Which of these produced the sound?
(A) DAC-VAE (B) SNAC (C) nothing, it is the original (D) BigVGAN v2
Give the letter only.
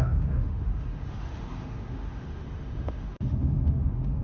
A